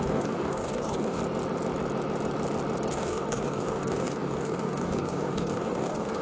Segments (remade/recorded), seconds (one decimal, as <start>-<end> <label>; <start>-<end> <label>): 0.0-1.2 remade; 1.2-2.9 recorded; 2.9-6.2 remade